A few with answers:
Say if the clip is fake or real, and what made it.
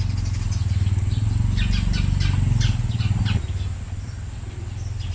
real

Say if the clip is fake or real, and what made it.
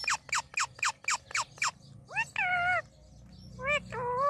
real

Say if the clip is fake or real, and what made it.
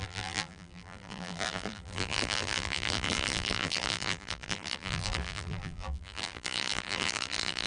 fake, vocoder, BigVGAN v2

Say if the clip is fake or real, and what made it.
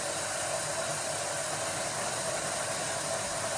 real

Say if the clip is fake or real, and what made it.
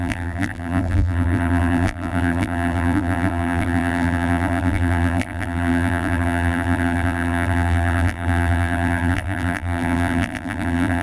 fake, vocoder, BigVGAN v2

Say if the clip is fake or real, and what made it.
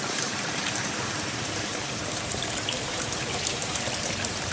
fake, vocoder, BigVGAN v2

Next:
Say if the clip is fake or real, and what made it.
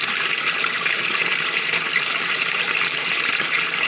fake, vocoder, BigVGAN v2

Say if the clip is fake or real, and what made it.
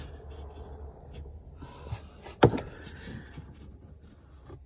real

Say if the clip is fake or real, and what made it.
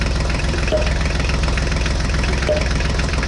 fake, vocoder, BigVGAN v2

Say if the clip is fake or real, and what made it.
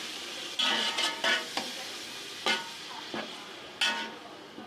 real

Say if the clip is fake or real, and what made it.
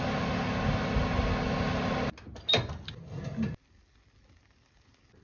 real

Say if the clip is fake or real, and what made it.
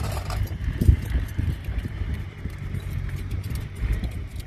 fake, vocoder, BigVGAN v2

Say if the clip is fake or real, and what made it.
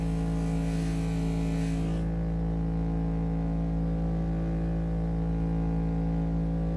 real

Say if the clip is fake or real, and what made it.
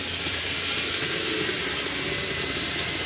real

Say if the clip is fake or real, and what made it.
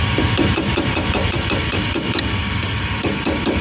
fake, vocoder, BigVGAN v2